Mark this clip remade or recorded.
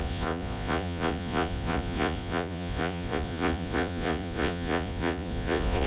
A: remade